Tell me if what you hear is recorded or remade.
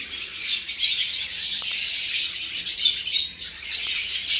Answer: remade